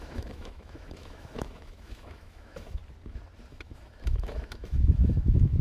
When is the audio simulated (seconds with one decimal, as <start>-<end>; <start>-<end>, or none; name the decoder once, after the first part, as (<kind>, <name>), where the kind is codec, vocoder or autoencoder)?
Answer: 0.0-2.8 (autoencoder, DAC-VAE); 3.5-5.6

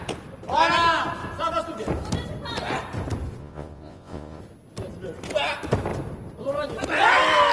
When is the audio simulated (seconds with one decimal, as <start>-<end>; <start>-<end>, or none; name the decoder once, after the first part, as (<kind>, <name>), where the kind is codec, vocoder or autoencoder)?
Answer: 3.4-4.4 (vocoder, Vocos)

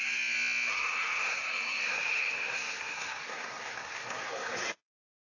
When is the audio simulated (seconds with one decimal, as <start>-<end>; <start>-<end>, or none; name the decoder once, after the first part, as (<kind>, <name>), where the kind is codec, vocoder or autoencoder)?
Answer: 0.7-5.4 (codec, SNAC)

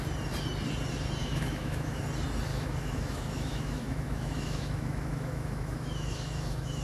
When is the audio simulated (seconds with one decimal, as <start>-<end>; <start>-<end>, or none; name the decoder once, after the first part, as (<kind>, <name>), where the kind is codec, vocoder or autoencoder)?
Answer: 1.2-2.0 (autoencoder, DAC-VAE); 2.5-6.8